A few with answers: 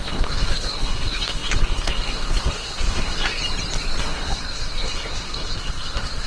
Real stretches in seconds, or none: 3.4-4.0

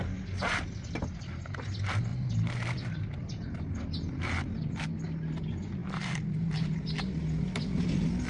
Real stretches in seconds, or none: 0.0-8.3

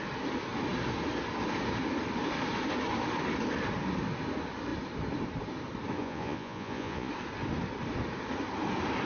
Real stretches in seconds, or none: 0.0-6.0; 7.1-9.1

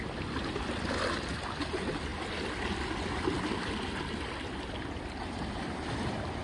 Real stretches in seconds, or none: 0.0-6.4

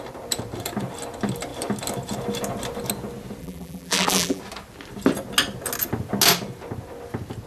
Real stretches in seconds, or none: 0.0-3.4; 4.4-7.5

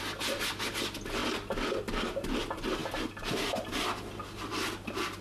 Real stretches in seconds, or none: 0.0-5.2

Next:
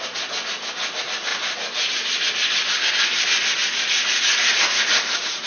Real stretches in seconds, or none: 0.0-3.6